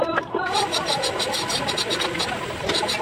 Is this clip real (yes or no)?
yes